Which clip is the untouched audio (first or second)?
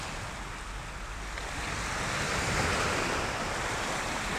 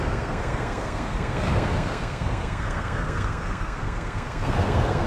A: first